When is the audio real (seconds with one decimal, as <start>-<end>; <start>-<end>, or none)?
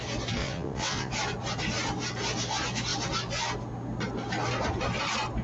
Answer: 0.0-0.4; 1.1-5.4